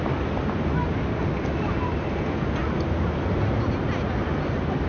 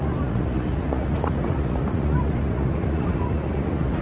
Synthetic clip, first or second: second